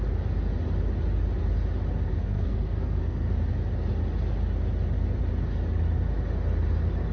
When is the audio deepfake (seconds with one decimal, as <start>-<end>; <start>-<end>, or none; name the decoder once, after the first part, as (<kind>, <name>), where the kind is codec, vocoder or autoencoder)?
2.1-3.3 (codec, SNAC)